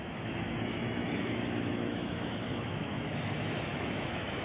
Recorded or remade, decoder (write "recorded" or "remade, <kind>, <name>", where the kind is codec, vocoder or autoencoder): remade, autoencoder, DAC-VAE